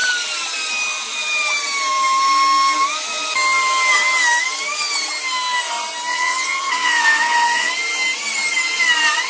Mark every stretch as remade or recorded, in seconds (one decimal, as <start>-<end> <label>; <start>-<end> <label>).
0.0-6.1 recorded; 6.1-7.7 remade; 7.7-9.3 recorded